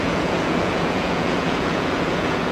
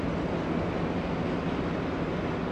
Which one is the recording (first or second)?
second